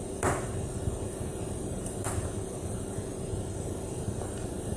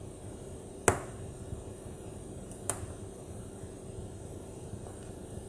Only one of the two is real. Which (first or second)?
second